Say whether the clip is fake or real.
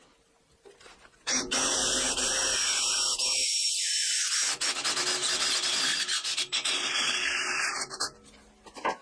real